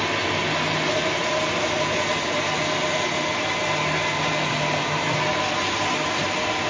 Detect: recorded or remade recorded